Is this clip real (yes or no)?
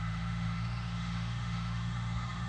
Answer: no